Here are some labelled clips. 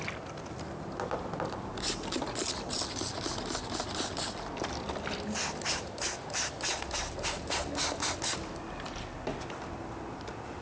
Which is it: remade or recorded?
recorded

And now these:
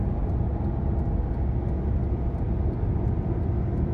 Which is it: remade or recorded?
recorded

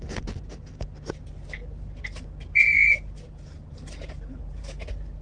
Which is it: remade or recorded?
recorded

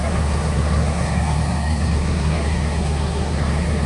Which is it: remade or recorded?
remade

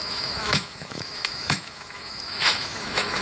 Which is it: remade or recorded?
remade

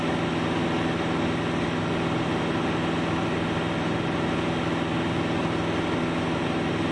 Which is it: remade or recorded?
recorded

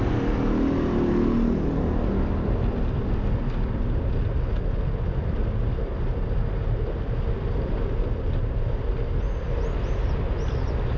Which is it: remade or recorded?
recorded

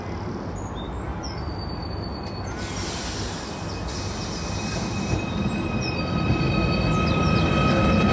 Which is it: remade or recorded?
recorded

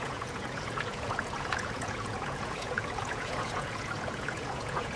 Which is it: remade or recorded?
remade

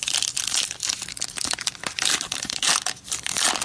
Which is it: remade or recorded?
recorded